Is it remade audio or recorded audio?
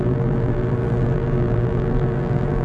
remade